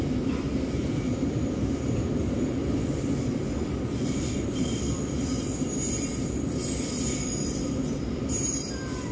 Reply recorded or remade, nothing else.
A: recorded